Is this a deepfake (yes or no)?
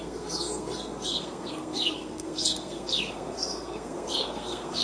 yes